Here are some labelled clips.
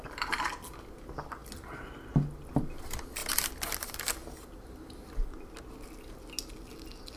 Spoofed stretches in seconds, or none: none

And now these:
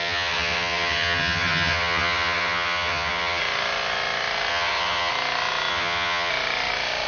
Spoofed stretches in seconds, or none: 0.0-3.4 (vocoder, HiFi-GAN); 4.5-5.1; 5.7-6.3

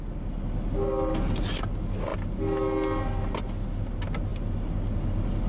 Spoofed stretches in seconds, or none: none

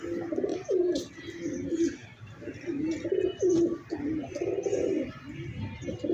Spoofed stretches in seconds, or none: 0.5-1.1 (vocoder, BigVGAN v2)

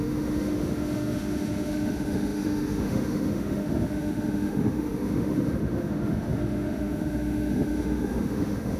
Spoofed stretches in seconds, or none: 0.0-8.8 (autoencoder, DAC-VAE)